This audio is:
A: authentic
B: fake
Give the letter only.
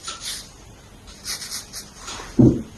A